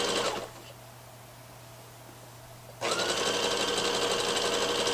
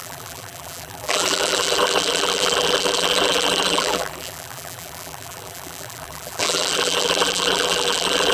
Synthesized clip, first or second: second